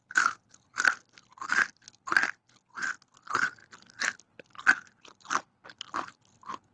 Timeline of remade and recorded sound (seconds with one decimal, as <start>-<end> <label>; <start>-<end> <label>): 0.0-6.7 recorded